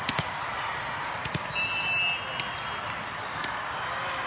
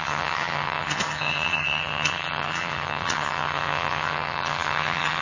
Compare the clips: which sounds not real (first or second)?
second